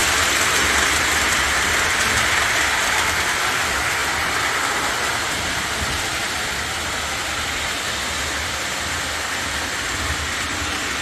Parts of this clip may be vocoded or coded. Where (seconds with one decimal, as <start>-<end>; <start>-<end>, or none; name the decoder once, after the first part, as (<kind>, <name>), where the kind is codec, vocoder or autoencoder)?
none